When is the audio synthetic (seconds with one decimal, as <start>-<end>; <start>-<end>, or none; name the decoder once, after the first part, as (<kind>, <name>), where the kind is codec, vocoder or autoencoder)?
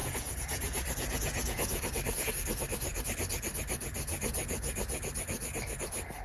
0.0-2.3 (vocoder, Vocos)